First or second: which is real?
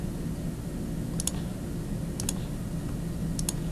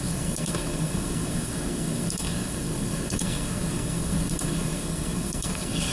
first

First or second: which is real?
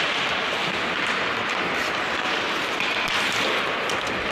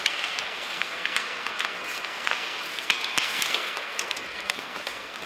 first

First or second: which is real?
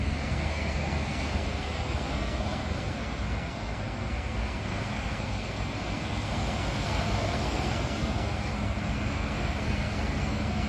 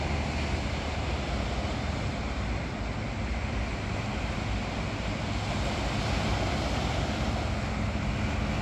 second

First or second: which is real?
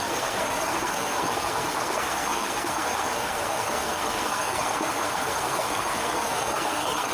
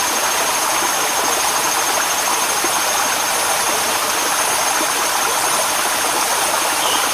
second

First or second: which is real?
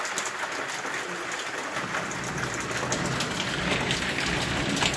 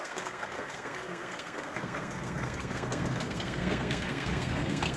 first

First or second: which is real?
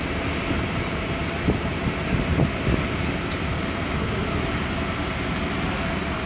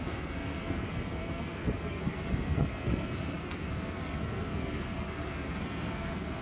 first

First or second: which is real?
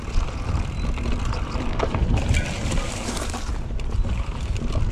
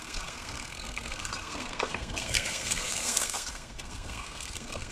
first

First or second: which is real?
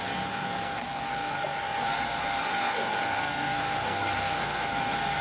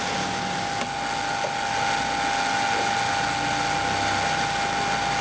second